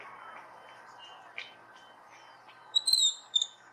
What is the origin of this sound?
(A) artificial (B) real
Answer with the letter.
B